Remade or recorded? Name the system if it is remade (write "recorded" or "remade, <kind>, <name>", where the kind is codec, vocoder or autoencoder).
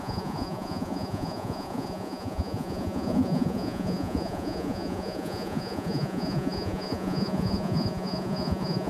remade, vocoder, Vocos